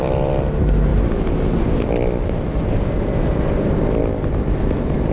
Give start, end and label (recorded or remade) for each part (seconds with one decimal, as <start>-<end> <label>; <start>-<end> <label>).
0.0-5.1 recorded